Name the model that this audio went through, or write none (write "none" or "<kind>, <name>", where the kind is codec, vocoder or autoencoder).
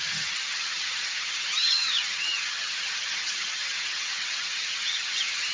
vocoder, HiFi-GAN